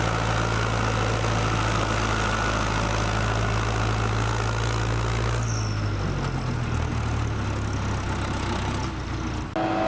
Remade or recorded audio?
recorded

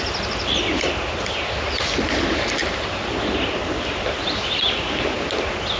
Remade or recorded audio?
recorded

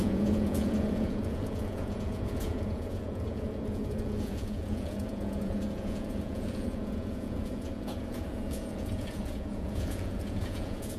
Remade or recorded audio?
remade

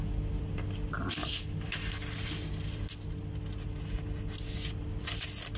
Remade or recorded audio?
recorded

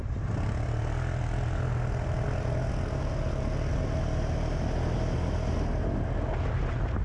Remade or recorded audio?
recorded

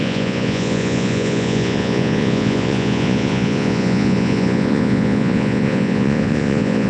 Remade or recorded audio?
remade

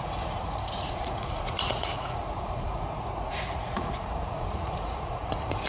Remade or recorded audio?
remade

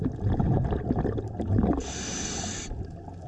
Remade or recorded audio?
recorded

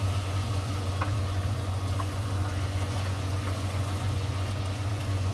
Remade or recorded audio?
remade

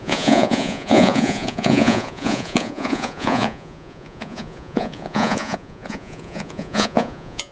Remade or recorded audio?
remade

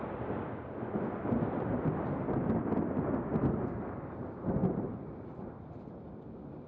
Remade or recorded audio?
recorded